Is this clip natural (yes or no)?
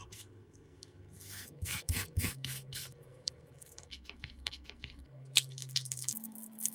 no